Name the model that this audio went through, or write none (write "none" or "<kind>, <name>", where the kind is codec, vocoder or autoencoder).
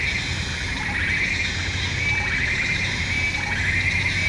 none